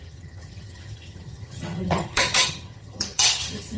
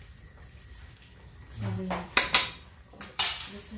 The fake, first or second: first